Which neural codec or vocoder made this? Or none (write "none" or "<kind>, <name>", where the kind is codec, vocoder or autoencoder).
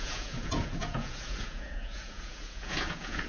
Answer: vocoder, Vocos